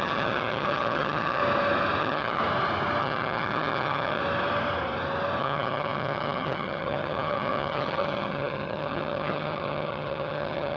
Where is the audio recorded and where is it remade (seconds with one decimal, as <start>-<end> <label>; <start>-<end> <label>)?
0.0-1.4 remade; 1.4-2.0 recorded; 2.0-2.4 remade; 2.4-3.0 recorded; 3.0-4.2 remade; 4.2-5.4 recorded; 5.4-10.8 remade

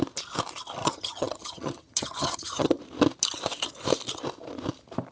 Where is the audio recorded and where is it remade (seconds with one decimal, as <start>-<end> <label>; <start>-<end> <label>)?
0.0-0.8 recorded; 0.8-2.8 remade; 2.8-5.1 recorded

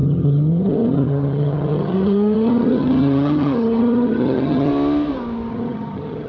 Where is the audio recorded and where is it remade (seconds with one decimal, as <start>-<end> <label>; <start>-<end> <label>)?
0.0-4.7 remade; 4.7-5.5 recorded; 5.5-6.3 remade

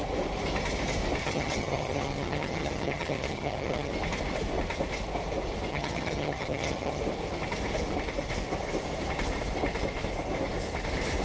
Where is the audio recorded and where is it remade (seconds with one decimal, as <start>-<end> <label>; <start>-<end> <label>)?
0.0-1.2 recorded; 1.2-3.9 remade; 3.9-5.7 recorded; 5.7-7.0 remade; 7.0-11.2 recorded

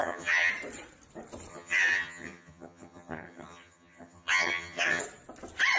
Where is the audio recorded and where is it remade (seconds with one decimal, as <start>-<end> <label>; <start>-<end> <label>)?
0.0-0.5 remade; 0.5-1.5 recorded; 1.5-5.0 remade; 5.0-5.8 recorded

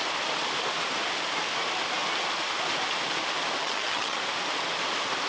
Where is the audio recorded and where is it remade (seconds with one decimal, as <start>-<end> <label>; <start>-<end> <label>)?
0.0-3.6 recorded; 3.6-4.2 remade; 4.2-5.3 recorded